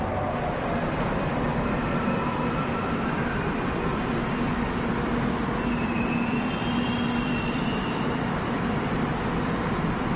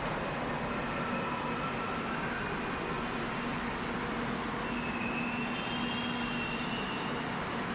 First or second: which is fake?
first